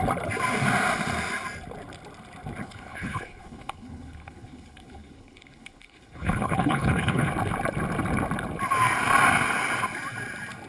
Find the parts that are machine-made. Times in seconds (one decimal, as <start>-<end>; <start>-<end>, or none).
2.6-7.3